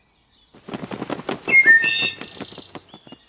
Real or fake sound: real